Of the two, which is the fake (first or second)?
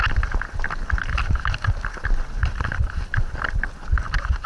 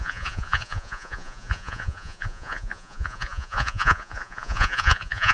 second